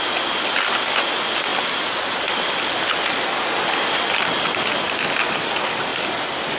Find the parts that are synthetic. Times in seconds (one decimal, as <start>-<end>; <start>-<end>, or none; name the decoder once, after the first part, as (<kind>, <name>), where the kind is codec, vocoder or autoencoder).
none